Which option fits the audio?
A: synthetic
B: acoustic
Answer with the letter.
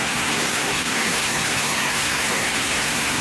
A